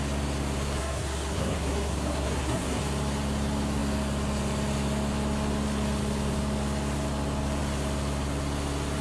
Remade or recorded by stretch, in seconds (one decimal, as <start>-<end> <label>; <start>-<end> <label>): 0.0-0.8 recorded; 0.8-2.8 remade; 2.8-9.0 recorded